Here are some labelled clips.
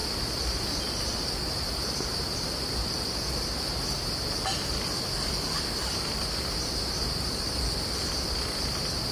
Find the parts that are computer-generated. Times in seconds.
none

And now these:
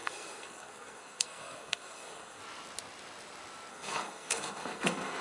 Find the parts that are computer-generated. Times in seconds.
0.0-2.4 (codec, SNAC); 3.7-5.2

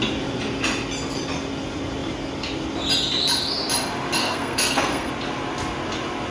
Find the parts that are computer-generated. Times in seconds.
4.2-5.1 (codec, SNAC)

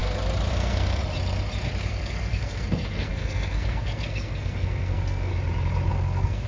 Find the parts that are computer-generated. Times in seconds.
0.5-1.0 (codec, SNAC); 1.8-5.3; 5.9-6.5

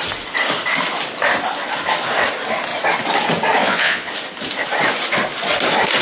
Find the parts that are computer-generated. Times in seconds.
3.6-4.1 (vocoder, Vocos)

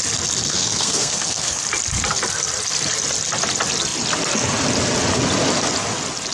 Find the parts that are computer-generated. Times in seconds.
0.5-1.6 (codec, SNAC)

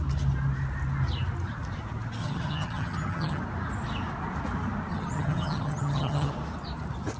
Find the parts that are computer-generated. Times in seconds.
2.2-3.4 (vocoder, HiFi-GAN); 4.9-6.3